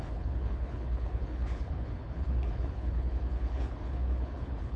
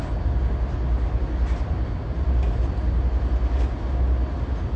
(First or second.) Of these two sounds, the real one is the second